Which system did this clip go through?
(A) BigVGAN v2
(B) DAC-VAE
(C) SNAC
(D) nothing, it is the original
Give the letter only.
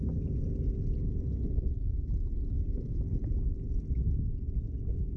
D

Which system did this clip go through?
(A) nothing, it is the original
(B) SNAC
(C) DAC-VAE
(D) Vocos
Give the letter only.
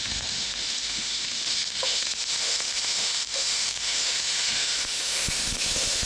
C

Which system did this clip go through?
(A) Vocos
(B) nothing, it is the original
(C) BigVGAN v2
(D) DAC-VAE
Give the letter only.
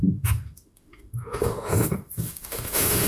D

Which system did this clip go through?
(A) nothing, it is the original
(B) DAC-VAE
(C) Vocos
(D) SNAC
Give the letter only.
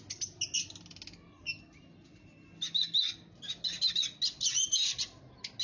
A